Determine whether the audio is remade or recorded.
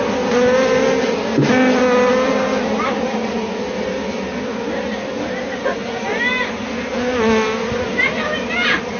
recorded